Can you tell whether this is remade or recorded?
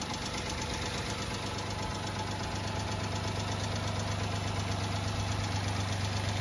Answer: recorded